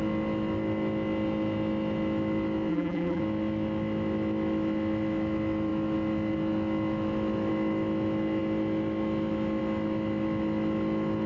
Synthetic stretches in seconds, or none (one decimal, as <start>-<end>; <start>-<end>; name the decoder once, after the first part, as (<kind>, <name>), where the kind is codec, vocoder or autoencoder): 2.7-3.2 (vocoder, BigVGAN v2)